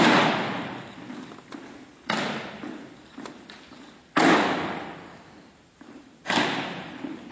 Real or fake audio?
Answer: real